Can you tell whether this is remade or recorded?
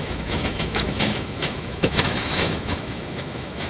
remade